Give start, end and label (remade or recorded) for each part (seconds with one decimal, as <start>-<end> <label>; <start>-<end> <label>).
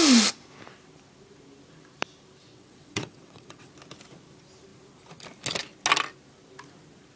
0.0-2.5 recorded; 2.5-3.7 remade; 3.7-7.2 recorded